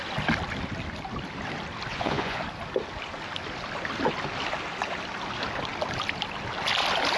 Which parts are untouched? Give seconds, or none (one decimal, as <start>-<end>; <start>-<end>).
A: 0.0-1.9; 2.4-7.2